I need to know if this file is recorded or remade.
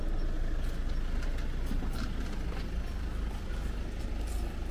recorded